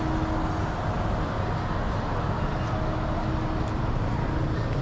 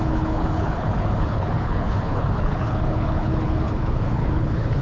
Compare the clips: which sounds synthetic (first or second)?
second